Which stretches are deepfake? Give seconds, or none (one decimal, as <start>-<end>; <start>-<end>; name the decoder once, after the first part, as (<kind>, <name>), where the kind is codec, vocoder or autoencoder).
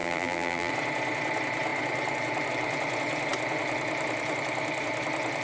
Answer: 0.0-0.7 (vocoder, BigVGAN v2)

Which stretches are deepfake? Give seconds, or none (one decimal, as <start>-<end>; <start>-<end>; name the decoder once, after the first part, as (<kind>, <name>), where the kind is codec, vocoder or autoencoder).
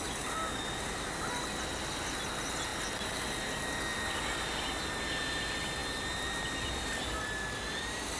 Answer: none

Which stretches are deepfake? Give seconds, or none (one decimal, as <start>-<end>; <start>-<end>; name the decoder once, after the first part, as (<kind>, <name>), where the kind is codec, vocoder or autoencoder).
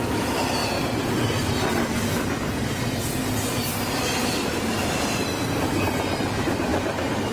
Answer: none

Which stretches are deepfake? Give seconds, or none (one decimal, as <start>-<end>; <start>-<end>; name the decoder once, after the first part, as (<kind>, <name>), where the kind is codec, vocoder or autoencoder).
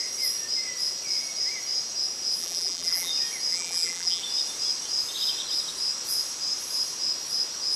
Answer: 2.4-3.1 (vocoder, BigVGAN v2); 3.5-4.2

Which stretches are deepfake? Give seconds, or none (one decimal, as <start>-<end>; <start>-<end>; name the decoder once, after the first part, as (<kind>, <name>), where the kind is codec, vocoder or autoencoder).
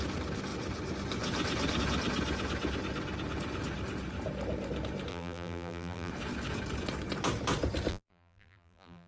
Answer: 5.1-6.1 (vocoder, BigVGAN v2); 7.9-9.1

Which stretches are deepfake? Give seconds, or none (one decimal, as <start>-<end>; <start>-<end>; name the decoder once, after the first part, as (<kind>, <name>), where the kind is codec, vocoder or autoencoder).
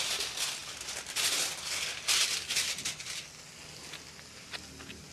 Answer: none